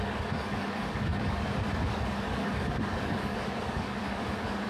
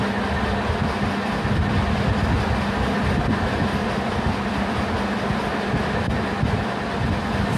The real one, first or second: second